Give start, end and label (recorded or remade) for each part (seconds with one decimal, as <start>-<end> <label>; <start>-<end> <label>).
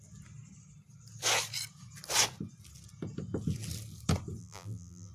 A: 0.0-4.4 recorded; 4.4-5.1 remade